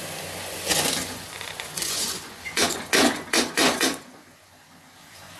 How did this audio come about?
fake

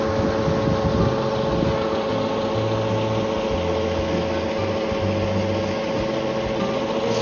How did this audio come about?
real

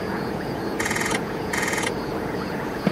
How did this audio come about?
fake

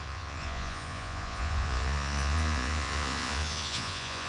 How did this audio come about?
fake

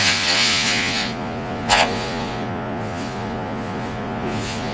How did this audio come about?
fake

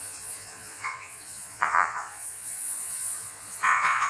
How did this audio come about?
fake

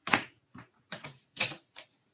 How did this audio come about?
fake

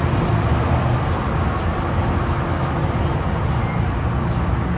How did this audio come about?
real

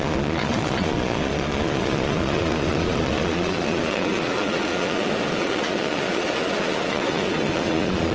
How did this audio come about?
fake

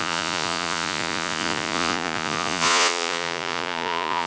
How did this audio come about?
fake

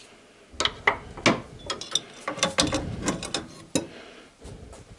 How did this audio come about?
real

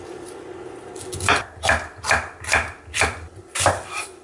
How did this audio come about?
real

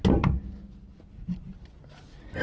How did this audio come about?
real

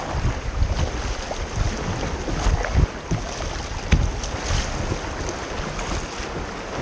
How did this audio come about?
real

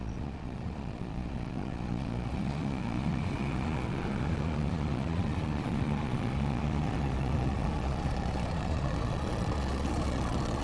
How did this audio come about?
fake